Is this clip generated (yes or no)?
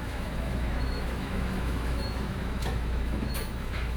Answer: yes